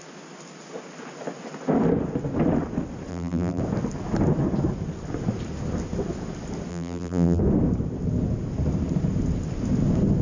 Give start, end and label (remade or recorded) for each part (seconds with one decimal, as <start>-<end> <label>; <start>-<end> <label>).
0.0-3.1 recorded; 3.1-3.6 remade; 3.6-6.7 recorded; 6.7-7.4 remade; 7.4-10.2 recorded